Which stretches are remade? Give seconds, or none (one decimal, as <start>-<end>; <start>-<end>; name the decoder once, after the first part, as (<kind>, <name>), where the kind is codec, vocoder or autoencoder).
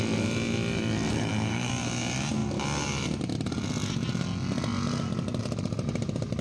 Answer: 1.1-1.7 (codec, SNAC)